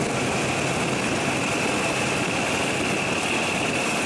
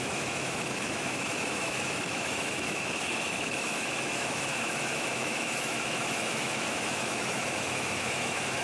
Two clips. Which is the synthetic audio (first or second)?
second